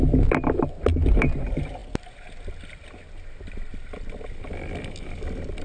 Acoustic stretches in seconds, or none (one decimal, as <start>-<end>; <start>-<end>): 0.0-5.6